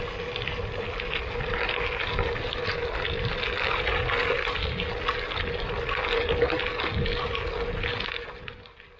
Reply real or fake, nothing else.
real